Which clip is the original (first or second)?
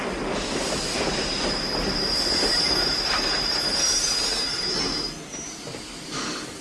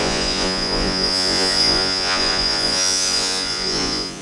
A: first